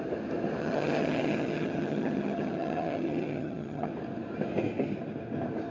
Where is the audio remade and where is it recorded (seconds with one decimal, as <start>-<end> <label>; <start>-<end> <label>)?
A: 0.0-0.6 recorded; 0.6-3.9 remade; 3.9-5.7 recorded